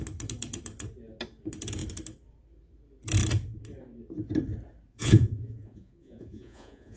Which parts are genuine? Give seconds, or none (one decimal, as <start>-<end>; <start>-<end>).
0.0-4.9